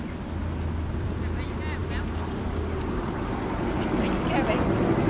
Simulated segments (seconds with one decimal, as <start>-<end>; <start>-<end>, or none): none